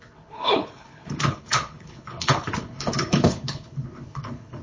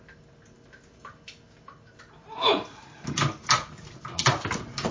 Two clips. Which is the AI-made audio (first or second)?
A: first